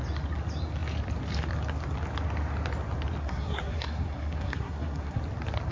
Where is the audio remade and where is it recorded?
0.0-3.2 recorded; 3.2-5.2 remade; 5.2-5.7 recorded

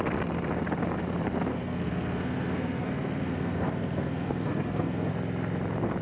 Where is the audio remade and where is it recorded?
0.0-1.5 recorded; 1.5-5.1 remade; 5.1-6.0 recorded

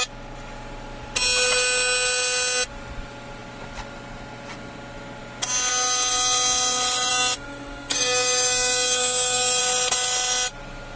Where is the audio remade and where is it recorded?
0.0-7.1 recorded; 7.1-9.6 remade; 9.6-11.0 recorded